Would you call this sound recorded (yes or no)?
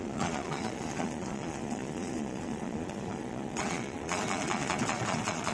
no